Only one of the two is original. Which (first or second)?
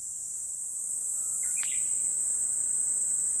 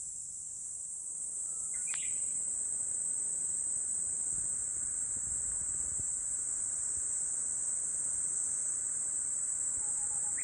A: first